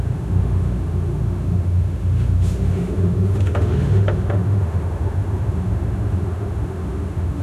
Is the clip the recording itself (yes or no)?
no